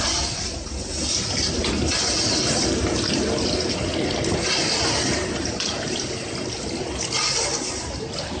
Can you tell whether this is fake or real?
real